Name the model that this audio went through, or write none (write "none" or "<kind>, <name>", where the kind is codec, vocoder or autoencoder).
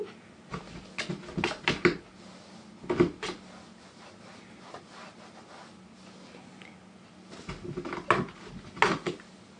none